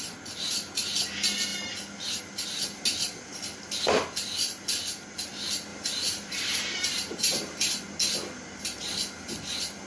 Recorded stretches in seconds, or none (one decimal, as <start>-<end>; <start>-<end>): 0.0-5.7; 7.7-9.9